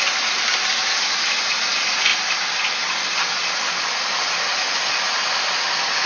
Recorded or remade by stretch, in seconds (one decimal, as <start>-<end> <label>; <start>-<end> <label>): 0.0-6.1 recorded